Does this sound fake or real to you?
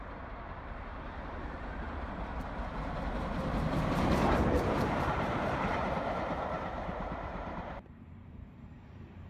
fake